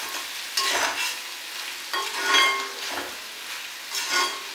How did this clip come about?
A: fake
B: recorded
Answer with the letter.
B